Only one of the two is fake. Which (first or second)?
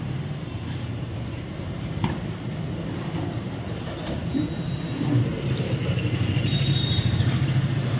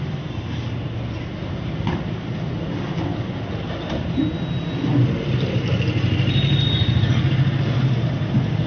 first